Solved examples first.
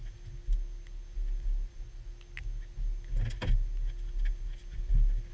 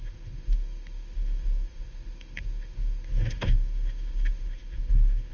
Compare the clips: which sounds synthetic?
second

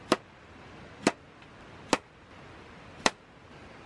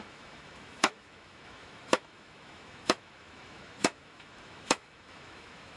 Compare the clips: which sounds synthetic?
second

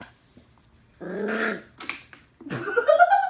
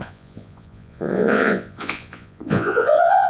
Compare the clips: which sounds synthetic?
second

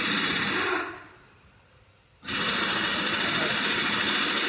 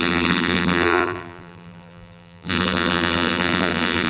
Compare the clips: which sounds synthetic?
second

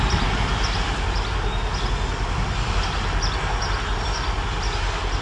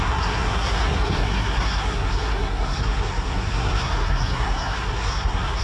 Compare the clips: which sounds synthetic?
second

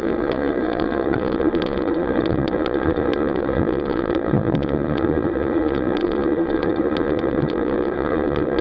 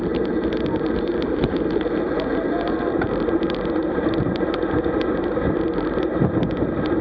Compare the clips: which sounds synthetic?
first